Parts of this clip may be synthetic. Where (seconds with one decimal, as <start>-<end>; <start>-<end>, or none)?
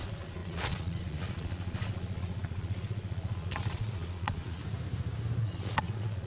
0.0-4.6; 5.4-6.3